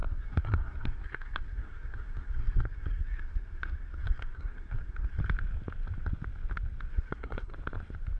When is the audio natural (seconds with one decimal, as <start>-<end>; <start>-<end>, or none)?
5.2-6.9; 7.5-8.2